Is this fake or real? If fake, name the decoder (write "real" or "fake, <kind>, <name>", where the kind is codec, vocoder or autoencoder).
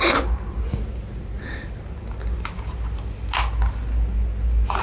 real